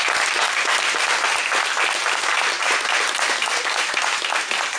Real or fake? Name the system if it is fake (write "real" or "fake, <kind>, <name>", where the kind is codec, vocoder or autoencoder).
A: real